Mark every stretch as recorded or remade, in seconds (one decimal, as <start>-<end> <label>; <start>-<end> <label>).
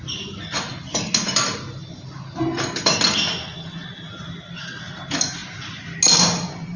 0.0-6.8 recorded